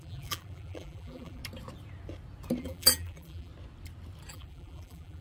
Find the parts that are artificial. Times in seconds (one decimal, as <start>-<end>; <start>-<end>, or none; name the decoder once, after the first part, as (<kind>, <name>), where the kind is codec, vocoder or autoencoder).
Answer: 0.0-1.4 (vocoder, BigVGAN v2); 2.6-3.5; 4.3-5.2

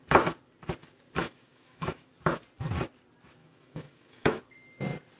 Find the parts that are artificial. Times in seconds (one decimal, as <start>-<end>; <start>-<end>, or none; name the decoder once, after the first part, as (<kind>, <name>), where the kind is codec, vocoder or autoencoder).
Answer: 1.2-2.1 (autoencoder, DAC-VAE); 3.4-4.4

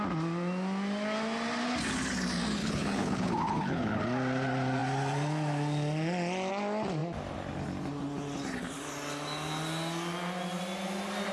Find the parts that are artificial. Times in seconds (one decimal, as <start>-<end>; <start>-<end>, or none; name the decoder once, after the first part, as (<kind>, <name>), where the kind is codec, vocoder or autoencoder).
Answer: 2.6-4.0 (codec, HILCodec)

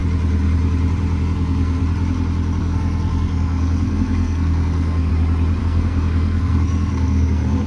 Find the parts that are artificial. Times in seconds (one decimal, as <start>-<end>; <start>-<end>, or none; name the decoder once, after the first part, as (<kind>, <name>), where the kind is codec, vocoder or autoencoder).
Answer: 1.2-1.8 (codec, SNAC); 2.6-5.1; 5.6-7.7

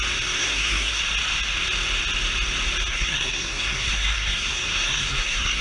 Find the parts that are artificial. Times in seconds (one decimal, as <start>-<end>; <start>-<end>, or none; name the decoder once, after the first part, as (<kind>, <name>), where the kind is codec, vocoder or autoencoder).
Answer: 0.4-1.0 (codec, SNAC); 2.9-5.6

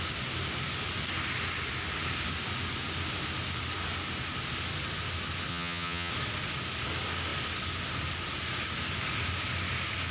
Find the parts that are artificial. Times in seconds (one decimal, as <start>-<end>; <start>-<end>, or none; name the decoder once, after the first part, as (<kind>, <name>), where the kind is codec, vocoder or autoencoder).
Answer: 5.5-6.1 (vocoder, HiFi-GAN)